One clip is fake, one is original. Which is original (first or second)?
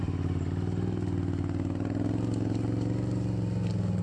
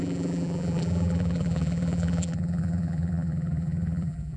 first